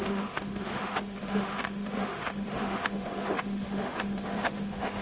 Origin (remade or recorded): remade